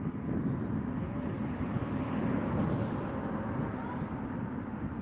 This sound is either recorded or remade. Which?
recorded